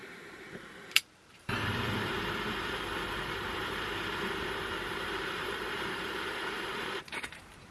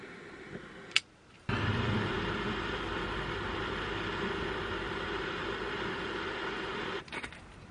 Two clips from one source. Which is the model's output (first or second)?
first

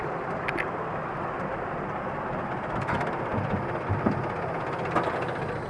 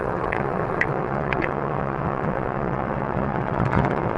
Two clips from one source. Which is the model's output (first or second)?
second